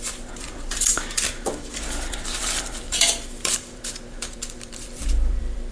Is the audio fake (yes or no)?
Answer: yes